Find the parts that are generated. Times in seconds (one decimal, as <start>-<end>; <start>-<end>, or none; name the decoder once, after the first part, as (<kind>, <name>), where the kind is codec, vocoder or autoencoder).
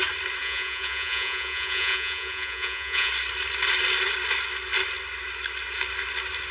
0.4-3.1 (vocoder, Vocos)